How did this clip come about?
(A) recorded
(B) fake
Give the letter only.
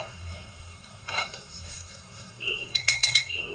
B